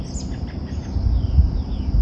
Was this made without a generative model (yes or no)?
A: yes